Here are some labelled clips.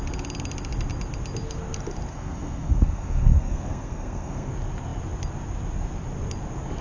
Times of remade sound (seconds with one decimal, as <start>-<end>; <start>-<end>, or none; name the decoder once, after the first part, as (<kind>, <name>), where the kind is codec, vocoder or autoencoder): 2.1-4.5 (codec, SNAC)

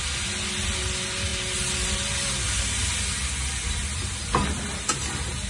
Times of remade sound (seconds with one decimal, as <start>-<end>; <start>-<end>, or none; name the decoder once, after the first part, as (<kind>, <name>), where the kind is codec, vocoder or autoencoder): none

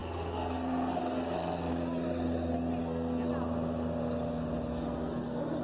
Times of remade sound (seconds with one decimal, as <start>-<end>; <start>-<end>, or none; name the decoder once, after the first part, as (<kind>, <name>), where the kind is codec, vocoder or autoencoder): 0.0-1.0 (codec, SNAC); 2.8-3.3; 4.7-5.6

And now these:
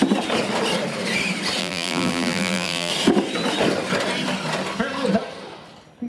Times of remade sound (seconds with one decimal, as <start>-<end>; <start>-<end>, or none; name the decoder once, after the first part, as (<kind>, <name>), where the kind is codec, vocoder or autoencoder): 1.6-2.9 (vocoder, BigVGAN v2)

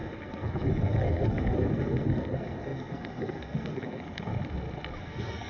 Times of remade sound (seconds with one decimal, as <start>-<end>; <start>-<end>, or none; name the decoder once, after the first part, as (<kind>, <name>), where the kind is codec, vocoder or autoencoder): 0.0-4.3 (codec, SNAC); 5.0-5.5

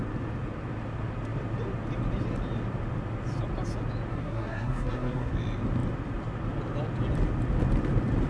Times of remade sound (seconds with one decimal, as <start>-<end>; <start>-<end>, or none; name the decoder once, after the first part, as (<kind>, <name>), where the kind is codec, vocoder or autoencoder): 4.1-5.3 (codec, SNAC)